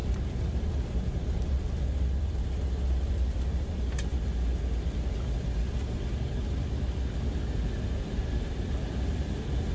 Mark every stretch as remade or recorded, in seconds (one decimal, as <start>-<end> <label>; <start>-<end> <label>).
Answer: 0.0-4.1 remade; 4.1-8.2 recorded; 8.2-9.7 remade